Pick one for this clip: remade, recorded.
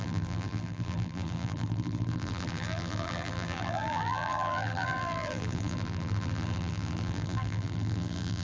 remade